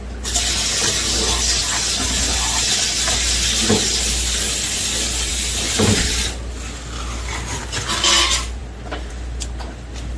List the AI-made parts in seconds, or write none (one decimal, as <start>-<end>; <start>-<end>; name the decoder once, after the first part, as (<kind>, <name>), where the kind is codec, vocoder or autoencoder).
none

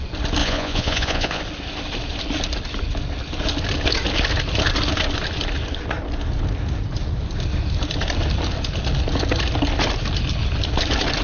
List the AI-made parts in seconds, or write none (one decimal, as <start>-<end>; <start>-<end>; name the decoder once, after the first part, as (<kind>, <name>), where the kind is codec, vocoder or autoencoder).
0.4-1.4 (vocoder, Vocos)